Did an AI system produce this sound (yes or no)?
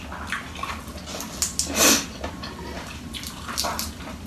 no